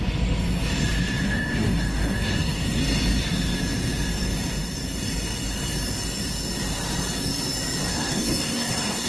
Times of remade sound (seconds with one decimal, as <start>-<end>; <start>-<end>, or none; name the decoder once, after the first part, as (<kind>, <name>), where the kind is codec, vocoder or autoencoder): 1.2-2.8 (codec, SNAC); 7.9-9.1